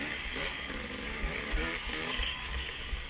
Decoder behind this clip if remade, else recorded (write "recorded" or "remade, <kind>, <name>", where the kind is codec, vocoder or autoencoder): remade, codec, DAC